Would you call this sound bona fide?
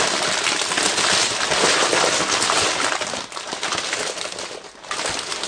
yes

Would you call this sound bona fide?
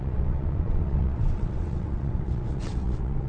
no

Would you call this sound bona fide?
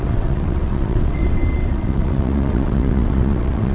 no